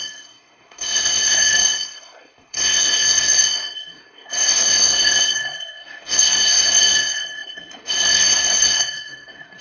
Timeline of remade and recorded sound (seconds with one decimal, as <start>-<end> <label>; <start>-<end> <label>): 0.0-9.6 remade

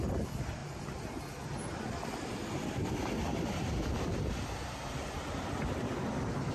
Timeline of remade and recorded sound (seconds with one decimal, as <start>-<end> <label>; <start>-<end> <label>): 0.0-6.5 recorded

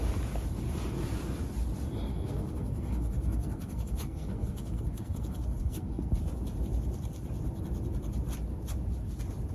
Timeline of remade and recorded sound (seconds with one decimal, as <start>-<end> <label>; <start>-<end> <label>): 0.0-2.1 recorded; 2.1-6.1 remade; 6.1-9.5 recorded

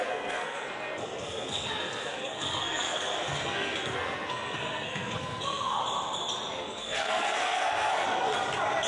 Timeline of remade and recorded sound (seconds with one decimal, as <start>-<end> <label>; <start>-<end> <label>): 0.0-5.8 remade; 5.8-6.6 recorded; 6.6-8.3 remade; 8.3-8.9 recorded